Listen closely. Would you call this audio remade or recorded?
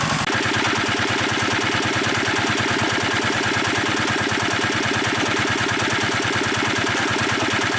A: recorded